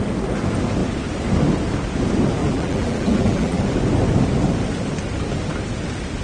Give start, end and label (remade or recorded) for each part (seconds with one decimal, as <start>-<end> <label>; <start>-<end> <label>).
0.0-2.4 recorded; 2.4-3.6 remade; 3.6-6.2 recorded